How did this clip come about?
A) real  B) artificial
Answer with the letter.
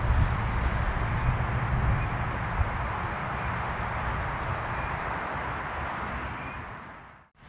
A